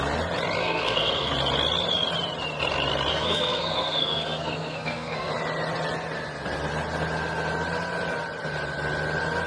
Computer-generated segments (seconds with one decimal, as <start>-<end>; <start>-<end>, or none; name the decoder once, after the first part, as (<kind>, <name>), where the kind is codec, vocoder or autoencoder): 0.6-1.3 (codec, SNAC); 3.1-5.3